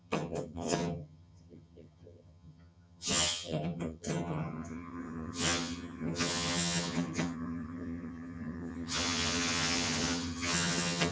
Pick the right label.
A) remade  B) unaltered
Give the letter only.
A